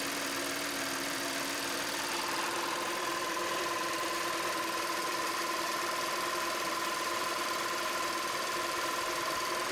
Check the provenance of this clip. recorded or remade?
remade